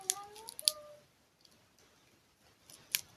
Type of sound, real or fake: real